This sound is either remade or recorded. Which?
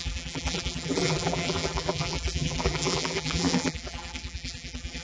remade